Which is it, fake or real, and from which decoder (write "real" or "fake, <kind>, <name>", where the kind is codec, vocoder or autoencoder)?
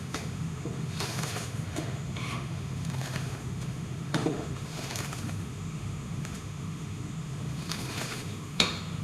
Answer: fake, autoencoder, DAC-VAE